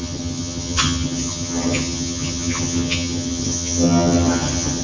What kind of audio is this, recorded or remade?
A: remade